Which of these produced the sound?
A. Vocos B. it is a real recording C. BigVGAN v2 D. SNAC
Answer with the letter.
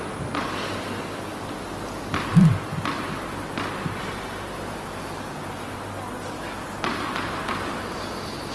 B